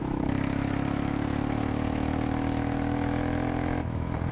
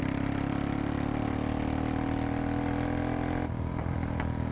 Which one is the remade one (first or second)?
first